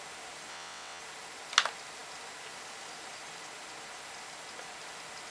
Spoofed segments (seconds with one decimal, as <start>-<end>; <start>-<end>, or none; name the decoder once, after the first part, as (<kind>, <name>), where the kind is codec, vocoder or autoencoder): 0.5-1.0 (vocoder, WaveNeXt)